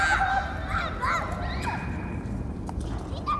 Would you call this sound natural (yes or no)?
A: yes